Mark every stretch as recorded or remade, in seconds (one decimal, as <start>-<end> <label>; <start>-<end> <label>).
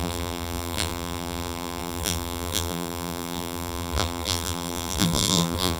0.0-5.8 remade